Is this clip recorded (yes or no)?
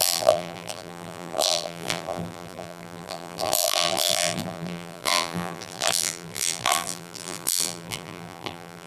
no